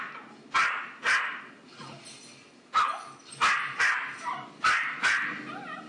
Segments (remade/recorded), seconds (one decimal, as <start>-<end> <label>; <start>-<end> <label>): 0.0-5.9 recorded